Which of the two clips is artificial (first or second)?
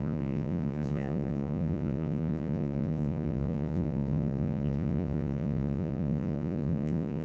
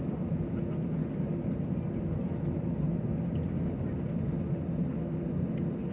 first